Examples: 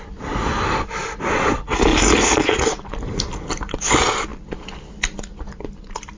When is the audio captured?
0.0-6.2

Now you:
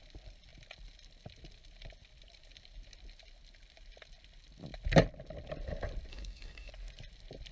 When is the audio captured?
0.0-6.1; 6.7-7.5

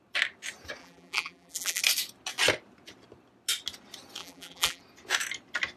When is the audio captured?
0.0-0.8; 1.8-4.2; 4.8-5.8